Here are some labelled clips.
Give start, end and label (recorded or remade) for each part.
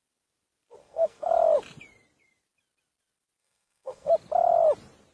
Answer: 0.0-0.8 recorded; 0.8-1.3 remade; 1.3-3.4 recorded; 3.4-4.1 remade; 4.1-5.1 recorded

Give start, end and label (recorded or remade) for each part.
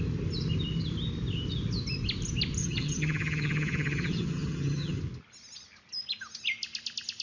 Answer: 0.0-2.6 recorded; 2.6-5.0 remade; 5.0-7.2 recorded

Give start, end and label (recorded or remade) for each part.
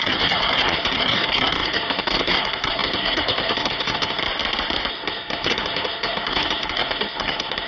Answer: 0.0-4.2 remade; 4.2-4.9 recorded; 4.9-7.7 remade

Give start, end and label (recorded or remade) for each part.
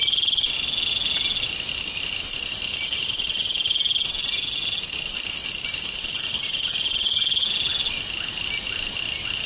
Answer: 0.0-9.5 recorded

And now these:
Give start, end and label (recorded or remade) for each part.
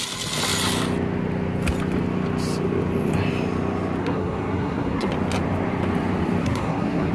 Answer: 0.0-4.0 recorded; 4.0-5.1 remade; 5.1-6.4 recorded; 6.4-7.1 remade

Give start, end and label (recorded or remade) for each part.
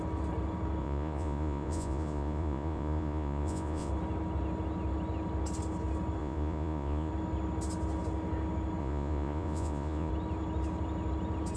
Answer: 0.0-0.8 recorded; 0.8-3.9 remade; 3.9-6.2 recorded; 6.2-7.1 remade; 7.1-8.8 recorded; 8.8-10.1 remade; 10.1-11.6 recorded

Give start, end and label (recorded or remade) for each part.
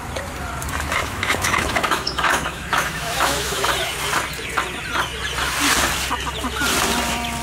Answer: 0.0-1.0 recorded; 1.0-3.7 remade; 3.7-7.4 recorded